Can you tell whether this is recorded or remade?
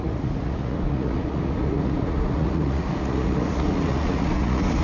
remade